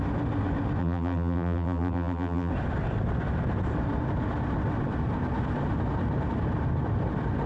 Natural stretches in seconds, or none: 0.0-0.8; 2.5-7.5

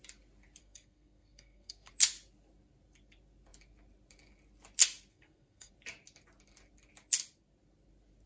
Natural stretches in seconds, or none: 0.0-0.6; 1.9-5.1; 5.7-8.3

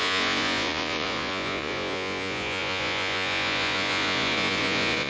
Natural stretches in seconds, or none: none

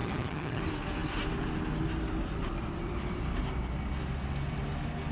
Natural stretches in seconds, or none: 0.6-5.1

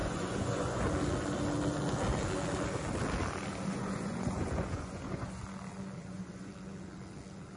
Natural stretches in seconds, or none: 0.8-3.7; 5.4-6.0; 6.5-7.6